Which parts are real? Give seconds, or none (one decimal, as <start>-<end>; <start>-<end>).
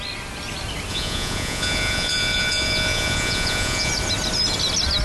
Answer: 0.0-0.9; 3.9-5.0